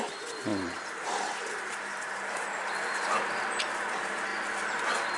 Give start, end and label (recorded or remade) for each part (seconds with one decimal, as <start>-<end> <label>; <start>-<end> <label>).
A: 0.0-4.3 remade; 4.3-5.2 recorded